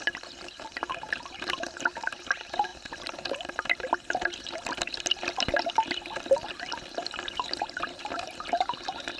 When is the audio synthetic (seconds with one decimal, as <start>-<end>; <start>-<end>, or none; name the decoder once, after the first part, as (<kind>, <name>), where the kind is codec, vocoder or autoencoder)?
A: none